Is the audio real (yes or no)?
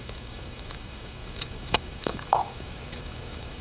no